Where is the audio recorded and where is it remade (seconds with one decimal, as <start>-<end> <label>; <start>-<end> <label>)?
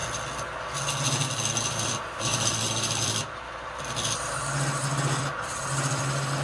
0.0-1.6 recorded; 1.6-6.4 remade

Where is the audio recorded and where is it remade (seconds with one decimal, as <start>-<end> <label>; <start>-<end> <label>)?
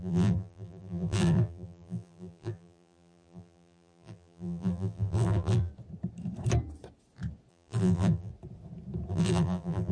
0.0-5.7 remade; 5.7-7.5 recorded; 7.5-8.3 remade; 8.3-9.1 recorded; 9.1-9.9 remade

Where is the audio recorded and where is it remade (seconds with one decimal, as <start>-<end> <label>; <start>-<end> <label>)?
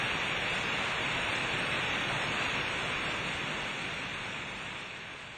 0.0-1.3 recorded; 1.3-3.2 remade; 3.2-4.1 recorded; 4.1-4.9 remade; 4.9-5.4 recorded